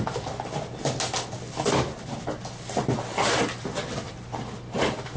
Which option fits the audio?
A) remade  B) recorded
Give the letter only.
B